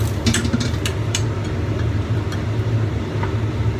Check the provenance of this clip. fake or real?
real